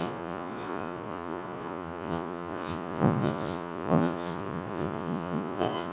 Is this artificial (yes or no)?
yes